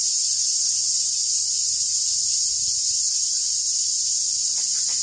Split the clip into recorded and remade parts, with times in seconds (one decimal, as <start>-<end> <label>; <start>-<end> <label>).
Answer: 0.0-5.0 recorded